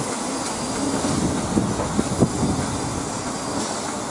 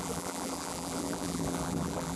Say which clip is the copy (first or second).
second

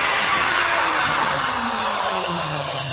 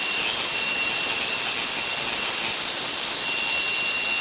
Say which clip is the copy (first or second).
first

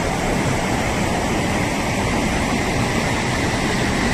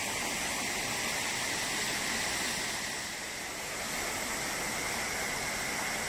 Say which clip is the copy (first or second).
first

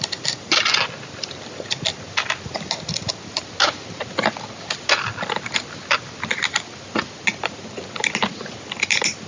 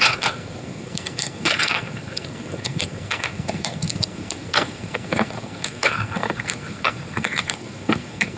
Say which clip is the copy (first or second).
second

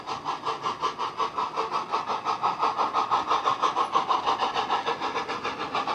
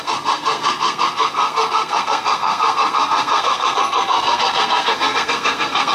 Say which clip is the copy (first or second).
second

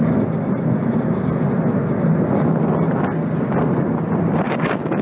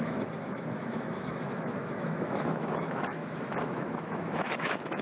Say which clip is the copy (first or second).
second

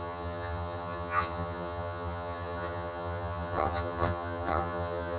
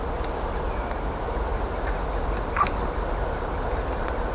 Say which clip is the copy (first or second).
first